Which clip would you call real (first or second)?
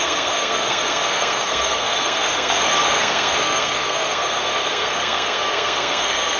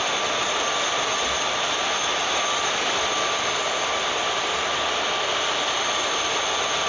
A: second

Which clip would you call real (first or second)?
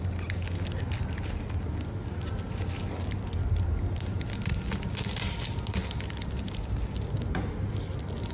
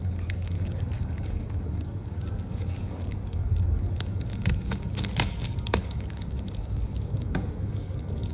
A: first